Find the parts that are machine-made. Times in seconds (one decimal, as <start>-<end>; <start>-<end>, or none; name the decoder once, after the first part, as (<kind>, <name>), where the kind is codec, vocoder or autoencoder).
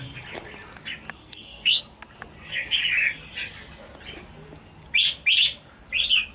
1.2-1.8 (codec, SNAC)